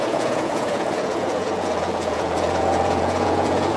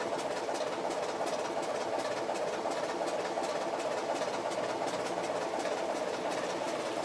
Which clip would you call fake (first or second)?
first